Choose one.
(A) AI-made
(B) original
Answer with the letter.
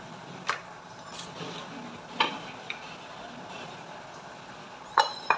B